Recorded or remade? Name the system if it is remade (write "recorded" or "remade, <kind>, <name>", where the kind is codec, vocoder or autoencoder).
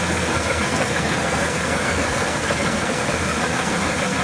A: remade, codec, SNAC